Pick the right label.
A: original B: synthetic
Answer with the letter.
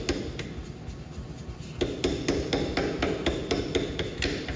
A